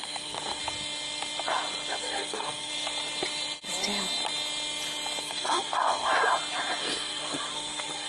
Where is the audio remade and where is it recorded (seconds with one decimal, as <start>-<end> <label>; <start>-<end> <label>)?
0.0-0.6 remade; 0.6-2.0 recorded; 2.0-2.7 remade; 2.7-5.2 recorded; 5.2-6.1 remade; 6.1-6.8 recorded; 6.8-8.1 remade